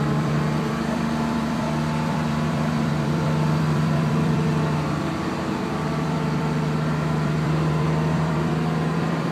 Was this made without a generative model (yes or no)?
no